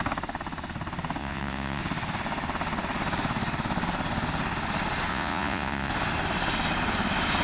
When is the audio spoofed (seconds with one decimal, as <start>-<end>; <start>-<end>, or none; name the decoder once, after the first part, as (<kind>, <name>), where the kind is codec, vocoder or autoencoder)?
1.2-1.8 (vocoder, Vocos); 5.1-5.9